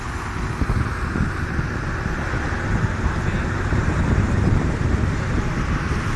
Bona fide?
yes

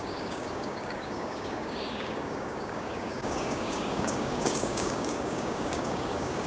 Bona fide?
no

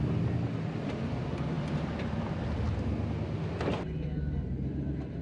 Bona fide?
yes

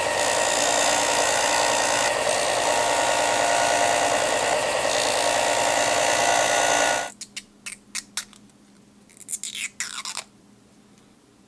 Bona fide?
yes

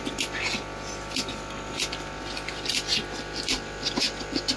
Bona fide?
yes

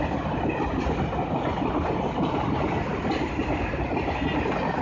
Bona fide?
yes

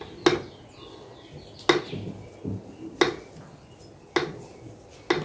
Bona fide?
yes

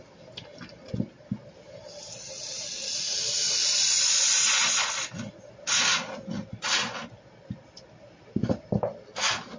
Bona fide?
yes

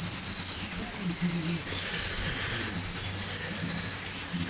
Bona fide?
yes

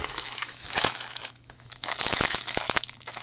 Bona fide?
no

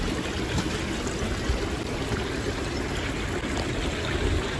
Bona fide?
yes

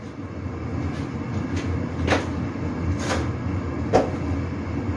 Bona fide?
yes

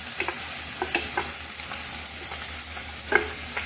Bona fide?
yes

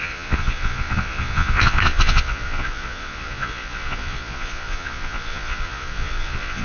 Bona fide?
no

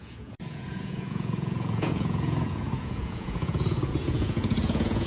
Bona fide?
no